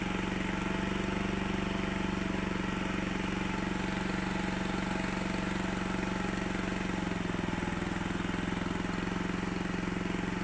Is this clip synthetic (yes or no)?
no